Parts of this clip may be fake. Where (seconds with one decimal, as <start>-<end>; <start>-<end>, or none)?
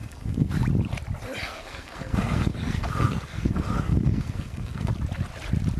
0.0-0.5; 1.4-4.9